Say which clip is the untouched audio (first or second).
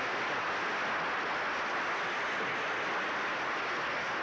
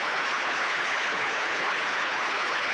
first